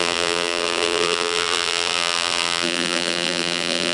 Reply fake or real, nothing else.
fake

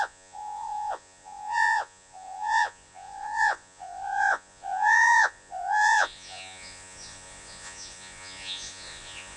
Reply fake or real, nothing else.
fake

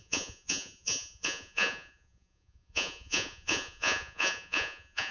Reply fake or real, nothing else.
fake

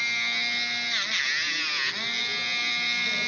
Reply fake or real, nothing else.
real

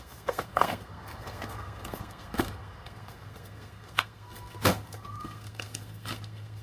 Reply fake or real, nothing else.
fake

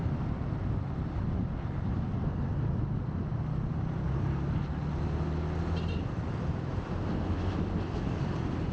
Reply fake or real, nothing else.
real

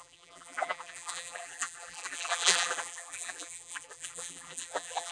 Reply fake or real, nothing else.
fake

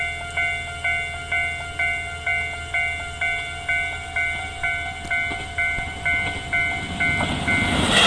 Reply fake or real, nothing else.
real